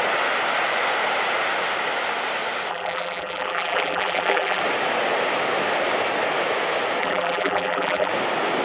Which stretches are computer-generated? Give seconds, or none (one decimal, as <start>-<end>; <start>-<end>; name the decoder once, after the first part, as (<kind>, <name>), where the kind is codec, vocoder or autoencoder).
2.7-4.6 (vocoder, BigVGAN v2); 7.0-8.1

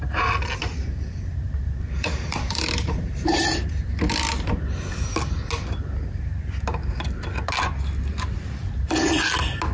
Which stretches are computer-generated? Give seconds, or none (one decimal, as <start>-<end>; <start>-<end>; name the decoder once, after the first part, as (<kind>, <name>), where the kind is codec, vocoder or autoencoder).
0.7-3.4 (vocoder, BigVGAN v2)

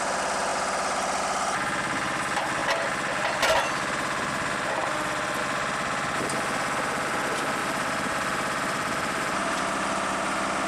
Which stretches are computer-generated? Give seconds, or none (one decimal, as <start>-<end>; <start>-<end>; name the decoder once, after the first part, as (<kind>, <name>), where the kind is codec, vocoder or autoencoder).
7.6-10.1 (vocoder, BigVGAN v2)

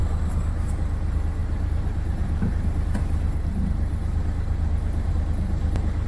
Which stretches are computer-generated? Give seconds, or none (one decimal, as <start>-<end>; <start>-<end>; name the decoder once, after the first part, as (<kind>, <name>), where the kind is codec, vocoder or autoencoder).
0.0-0.7 (vocoder, BigVGAN v2); 1.4-5.1